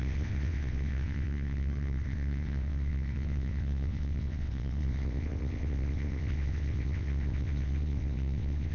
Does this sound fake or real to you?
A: fake